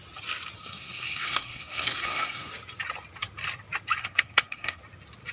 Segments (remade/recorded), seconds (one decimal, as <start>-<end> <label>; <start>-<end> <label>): 0.0-0.6 recorded; 0.6-2.5 remade; 2.5-4.0 recorded; 4.0-4.8 remade; 4.8-5.3 recorded